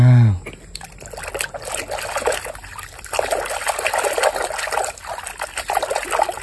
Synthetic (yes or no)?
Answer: no